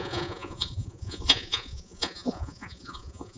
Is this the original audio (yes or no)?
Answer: no